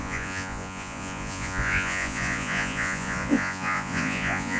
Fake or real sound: fake